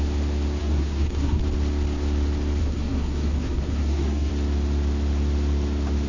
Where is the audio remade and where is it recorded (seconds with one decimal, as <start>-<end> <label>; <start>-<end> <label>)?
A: 0.0-0.6 recorded; 0.6-1.4 remade; 1.4-2.6 recorded; 2.6-4.3 remade; 4.3-6.1 recorded